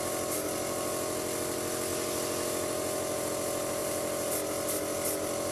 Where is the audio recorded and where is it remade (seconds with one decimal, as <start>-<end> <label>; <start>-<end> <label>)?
0.0-3.8 recorded; 3.8-4.3 remade; 4.3-5.5 recorded